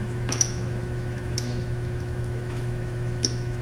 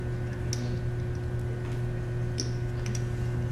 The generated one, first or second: first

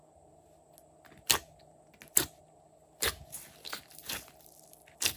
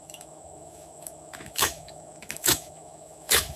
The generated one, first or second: second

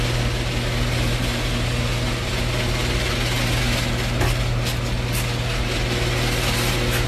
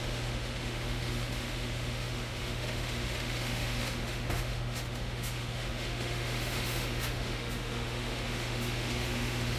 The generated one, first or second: second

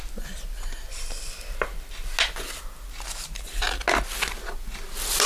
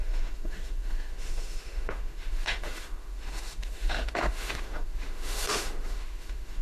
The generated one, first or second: second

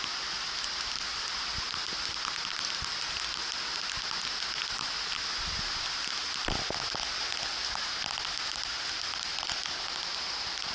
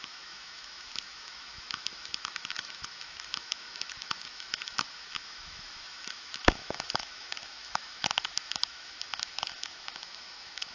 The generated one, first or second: second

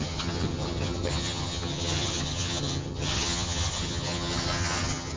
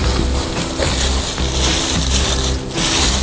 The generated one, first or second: first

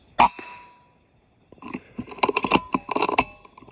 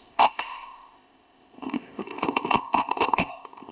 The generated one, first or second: second